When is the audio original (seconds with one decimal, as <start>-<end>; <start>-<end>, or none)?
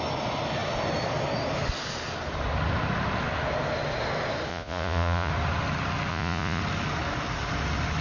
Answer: 0.0-4.5; 5.3-6.1; 6.6-8.0